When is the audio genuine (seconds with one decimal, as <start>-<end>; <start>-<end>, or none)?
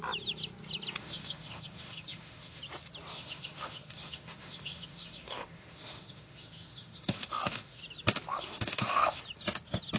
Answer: 0.0-1.0; 2.6-3.1; 7.8-8.3; 9.2-10.0